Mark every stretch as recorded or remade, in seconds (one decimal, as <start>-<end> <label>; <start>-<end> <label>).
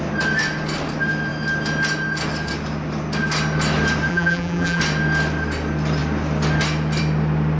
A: 0.0-4.1 recorded; 4.1-4.8 remade; 4.8-7.6 recorded